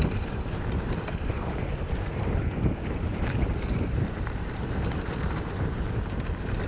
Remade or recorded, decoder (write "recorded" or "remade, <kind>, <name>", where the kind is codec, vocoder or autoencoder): remade, vocoder, BigVGAN v2